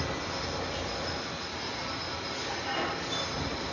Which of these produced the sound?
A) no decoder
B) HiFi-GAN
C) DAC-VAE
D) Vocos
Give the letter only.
A